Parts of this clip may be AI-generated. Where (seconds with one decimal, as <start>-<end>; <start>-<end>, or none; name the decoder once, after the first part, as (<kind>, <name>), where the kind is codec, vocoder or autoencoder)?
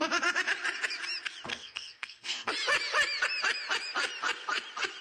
1.5-2.5 (codec, SNAC)